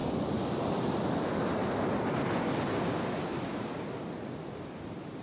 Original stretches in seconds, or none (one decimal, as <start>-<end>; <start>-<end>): 0.0-5.2